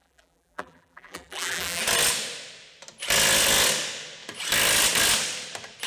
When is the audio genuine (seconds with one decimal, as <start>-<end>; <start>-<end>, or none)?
1.8-5.9